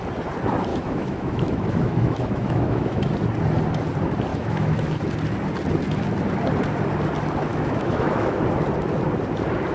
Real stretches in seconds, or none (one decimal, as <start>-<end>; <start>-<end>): 0.0-0.7; 3.0-4.3; 5.0-7.5; 8.4-9.7